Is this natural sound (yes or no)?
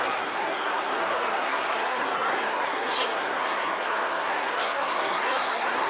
no